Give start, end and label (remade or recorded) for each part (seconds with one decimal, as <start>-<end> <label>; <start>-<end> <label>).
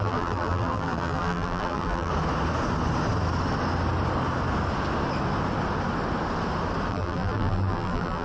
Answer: 0.0-2.1 remade; 2.1-6.9 recorded; 6.9-8.2 remade